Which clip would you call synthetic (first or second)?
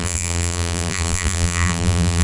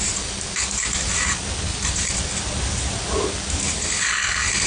first